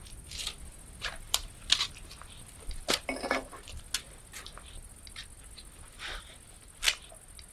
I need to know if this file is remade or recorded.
recorded